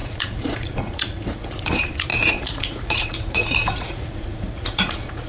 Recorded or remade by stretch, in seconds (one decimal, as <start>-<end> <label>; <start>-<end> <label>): 0.0-1.6 remade; 1.6-2.1 recorded; 2.1-5.3 remade